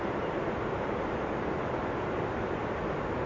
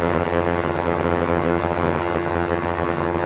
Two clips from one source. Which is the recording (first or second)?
first